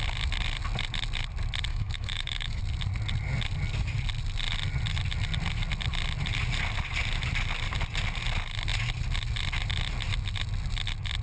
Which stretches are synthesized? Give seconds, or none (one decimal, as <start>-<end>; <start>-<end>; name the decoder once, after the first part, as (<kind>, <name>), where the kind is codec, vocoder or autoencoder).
1.7-2.6 (autoencoder, DAC-VAE)